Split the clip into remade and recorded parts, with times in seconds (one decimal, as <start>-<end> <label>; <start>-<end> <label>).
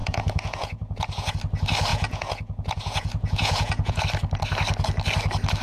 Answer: 0.0-1.3 remade; 1.3-1.9 recorded; 1.9-4.0 remade; 4.0-5.6 recorded